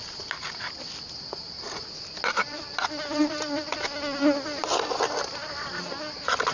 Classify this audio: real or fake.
real